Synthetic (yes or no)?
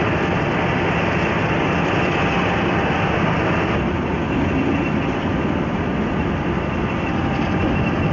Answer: no